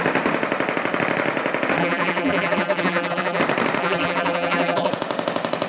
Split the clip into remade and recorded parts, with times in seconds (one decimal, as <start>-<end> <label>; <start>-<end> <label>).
0.0-1.8 recorded; 1.8-3.4 remade; 3.4-3.8 recorded; 3.8-4.9 remade; 4.9-5.7 recorded